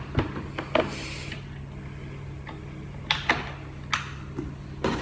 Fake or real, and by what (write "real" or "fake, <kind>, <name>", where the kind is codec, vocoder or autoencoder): real